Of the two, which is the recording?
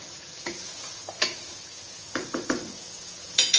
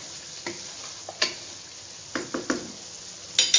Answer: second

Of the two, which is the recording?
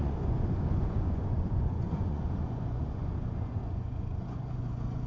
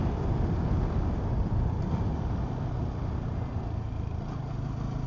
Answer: second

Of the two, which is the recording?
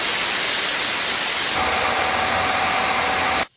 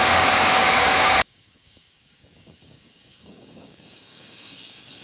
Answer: first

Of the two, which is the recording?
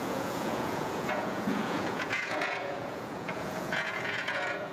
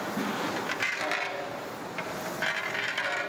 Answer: second